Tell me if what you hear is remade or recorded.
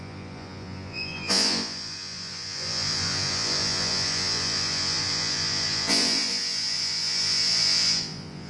remade